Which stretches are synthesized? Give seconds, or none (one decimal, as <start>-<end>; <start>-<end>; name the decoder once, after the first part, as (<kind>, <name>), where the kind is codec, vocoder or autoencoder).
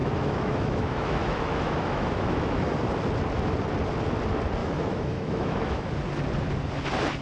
0.0-2.6 (autoencoder, DAC-VAE); 4.6-5.9